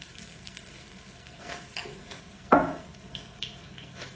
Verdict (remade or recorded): remade